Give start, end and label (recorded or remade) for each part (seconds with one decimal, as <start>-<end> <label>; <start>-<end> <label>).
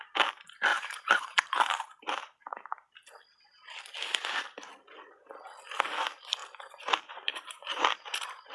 0.0-0.7 recorded; 0.7-3.1 remade; 3.1-6.4 recorded; 6.4-8.5 remade